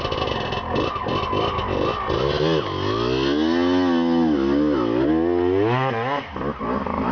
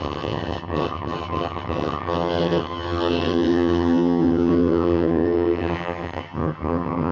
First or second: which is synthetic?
second